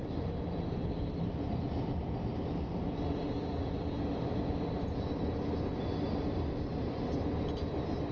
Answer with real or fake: real